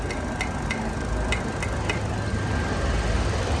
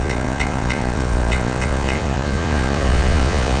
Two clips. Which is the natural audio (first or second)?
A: first